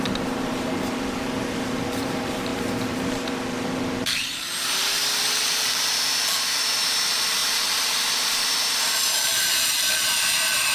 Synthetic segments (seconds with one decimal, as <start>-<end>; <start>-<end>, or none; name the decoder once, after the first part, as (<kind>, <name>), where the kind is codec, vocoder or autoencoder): 0.0-10.7 (vocoder, BigVGAN v2)